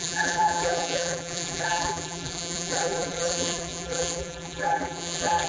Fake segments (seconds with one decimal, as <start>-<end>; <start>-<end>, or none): 0.0-5.5